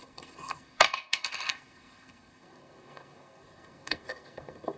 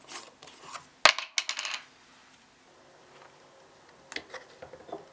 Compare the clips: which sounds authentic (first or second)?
second